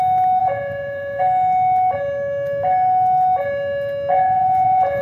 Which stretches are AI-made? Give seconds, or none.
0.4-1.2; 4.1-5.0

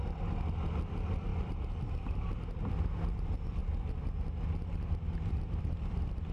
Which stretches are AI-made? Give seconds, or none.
0.0-6.3

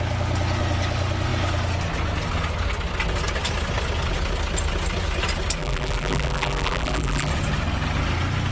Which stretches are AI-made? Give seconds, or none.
5.6-7.3

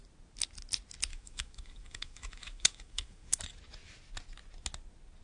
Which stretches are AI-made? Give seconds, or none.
1.1-3.4

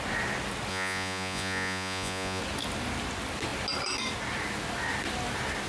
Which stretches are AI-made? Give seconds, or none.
0.7-2.4